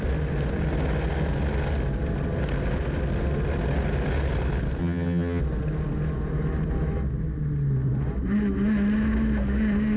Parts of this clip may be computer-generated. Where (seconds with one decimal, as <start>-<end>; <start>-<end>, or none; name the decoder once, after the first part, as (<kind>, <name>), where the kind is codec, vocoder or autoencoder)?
4.8-5.4 (vocoder, HiFi-GAN)